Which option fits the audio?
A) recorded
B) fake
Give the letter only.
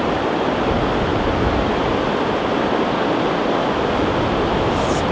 A